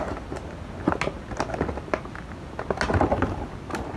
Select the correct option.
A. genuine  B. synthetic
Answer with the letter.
A